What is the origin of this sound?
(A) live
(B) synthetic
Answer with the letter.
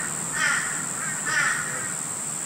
A